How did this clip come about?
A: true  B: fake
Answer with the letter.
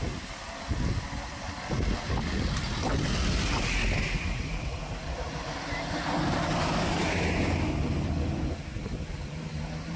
A